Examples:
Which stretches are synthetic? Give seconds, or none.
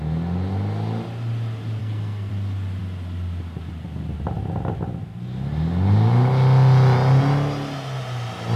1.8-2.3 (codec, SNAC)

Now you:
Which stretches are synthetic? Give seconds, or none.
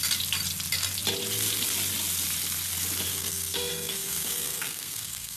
3.1-5.4 (codec, SNAC)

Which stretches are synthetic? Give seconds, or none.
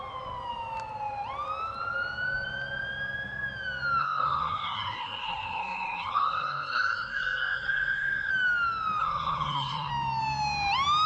4.0-8.3 (codec, SNAC); 9.0-9.9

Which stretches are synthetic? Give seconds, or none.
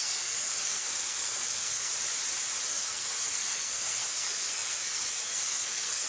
0.0-1.9 (codec, SNAC); 2.7-6.1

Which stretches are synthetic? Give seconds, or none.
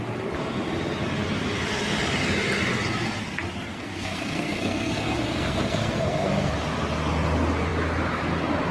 3.7-6.5 (codec, SNAC)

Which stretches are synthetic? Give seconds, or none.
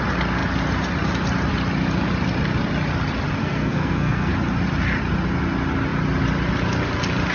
3.4-4.3 (codec, SNAC)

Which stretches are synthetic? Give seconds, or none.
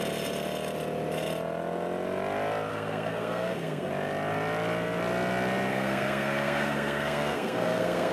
2.7-3.9 (codec, SNAC); 5.7-8.1